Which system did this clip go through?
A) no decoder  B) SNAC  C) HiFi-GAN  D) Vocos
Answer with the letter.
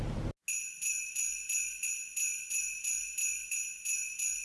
A